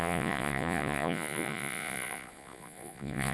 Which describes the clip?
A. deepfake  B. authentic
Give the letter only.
A